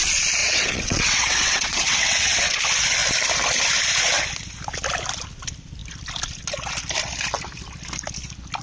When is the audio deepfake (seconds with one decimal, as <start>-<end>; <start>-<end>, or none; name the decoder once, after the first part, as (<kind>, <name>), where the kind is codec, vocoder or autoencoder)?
0.4-2.6 (vocoder, WaveNeXt)